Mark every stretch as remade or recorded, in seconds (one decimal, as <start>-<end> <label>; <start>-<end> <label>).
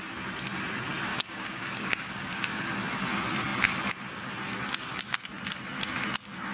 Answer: 0.0-1.1 recorded; 1.1-2.6 remade; 2.6-6.5 recorded